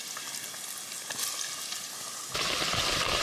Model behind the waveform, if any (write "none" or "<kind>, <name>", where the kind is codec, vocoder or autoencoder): none